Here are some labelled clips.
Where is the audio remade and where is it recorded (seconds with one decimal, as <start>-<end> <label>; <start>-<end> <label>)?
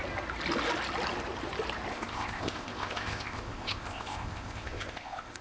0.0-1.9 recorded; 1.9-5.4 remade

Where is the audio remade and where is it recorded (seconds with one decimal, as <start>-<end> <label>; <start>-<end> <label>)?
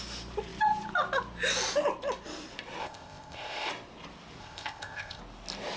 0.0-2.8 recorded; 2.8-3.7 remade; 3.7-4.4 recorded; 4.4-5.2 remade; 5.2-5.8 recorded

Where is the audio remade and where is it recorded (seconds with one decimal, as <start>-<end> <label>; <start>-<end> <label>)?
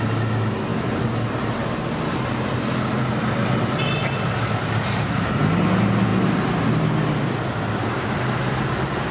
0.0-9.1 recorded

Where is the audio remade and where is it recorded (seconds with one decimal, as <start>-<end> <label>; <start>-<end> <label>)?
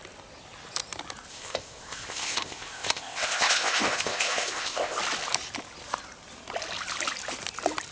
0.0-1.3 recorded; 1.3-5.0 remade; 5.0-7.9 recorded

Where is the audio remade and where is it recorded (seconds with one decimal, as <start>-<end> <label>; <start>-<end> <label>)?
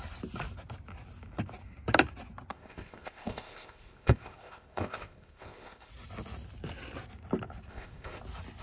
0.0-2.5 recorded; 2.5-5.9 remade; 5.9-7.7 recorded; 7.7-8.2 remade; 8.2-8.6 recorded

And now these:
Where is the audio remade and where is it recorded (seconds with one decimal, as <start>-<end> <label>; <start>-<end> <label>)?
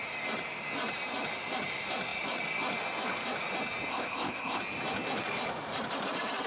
0.0-3.9 recorded; 3.9-4.6 remade; 4.6-6.5 recorded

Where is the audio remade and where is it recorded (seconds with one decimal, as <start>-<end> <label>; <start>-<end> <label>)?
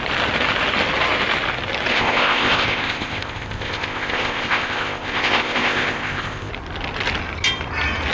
0.0-1.9 recorded; 1.9-6.5 remade; 6.5-8.1 recorded